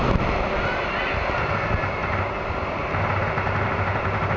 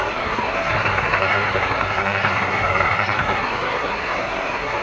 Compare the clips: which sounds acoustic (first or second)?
first